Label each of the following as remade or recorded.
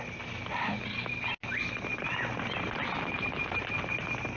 recorded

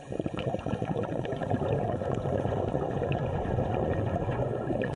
remade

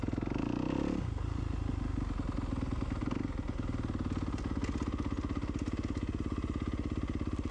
recorded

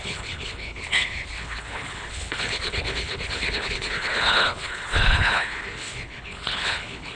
remade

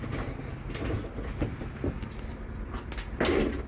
recorded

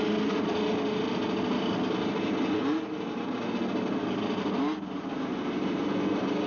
recorded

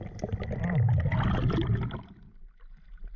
recorded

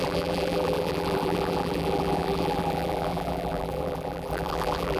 remade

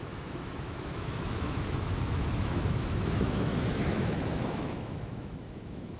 remade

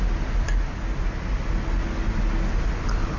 recorded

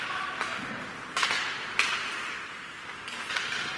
recorded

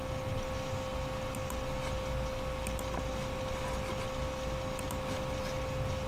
recorded